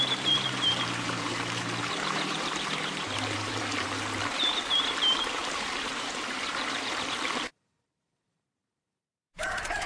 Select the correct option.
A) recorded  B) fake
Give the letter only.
B